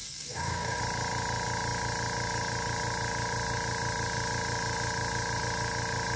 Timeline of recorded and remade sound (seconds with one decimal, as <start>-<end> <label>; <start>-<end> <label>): 0.0-0.8 remade; 0.8-6.2 recorded